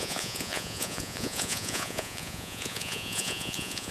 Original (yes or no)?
no